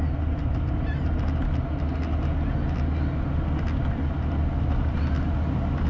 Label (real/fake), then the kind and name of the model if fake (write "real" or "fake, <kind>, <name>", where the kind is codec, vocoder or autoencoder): real